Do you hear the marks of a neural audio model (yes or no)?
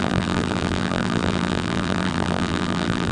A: yes